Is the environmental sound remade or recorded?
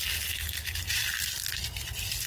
recorded